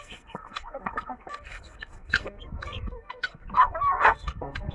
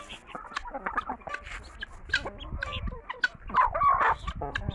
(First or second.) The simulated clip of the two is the first